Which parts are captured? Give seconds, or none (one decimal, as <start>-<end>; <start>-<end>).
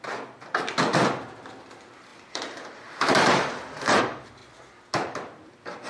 0.0-2.1; 4.0-5.9